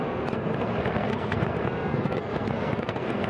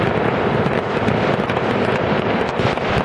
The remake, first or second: first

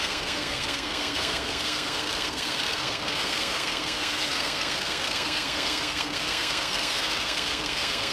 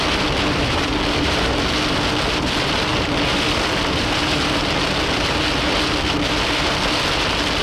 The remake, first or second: first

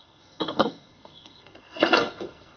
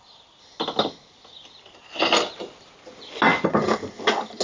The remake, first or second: first